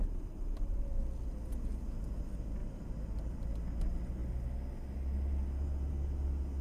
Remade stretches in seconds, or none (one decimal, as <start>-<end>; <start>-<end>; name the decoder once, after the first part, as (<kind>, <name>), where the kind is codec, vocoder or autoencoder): 2.6-3.4 (vocoder, BigVGAN v2)